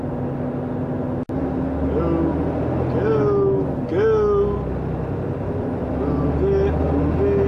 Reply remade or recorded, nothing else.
recorded